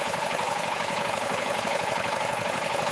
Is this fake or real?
fake